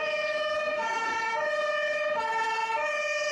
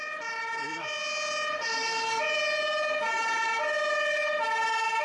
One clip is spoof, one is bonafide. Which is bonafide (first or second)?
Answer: second